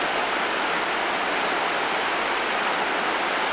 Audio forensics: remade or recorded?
recorded